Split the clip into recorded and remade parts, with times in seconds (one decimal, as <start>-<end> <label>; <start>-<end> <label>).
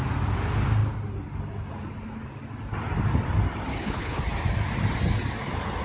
0.0-3.7 recorded; 3.7-4.2 remade; 4.2-5.8 recorded